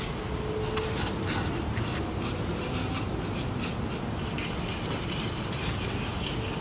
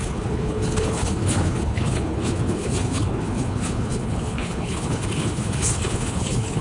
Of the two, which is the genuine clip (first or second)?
first